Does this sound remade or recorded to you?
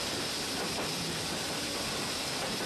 recorded